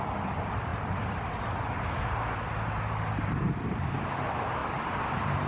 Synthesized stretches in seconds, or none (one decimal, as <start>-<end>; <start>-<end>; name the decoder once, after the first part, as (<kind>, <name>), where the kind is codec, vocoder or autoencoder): none